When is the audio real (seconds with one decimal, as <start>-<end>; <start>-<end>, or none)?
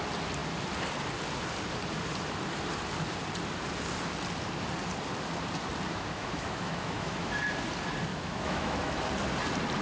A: 0.0-5.9; 7.4-8.1; 9.0-9.8